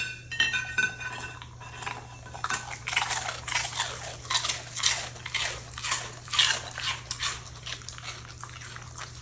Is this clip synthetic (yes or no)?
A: no